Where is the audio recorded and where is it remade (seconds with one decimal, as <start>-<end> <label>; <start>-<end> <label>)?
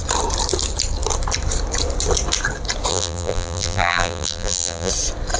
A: 0.0-2.9 recorded; 2.9-4.9 remade; 4.9-5.4 recorded